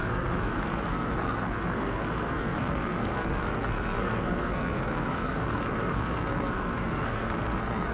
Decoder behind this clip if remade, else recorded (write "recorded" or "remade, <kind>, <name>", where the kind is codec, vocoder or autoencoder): remade, codec, SNAC